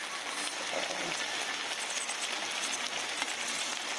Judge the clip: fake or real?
real